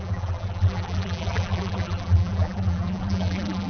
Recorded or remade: remade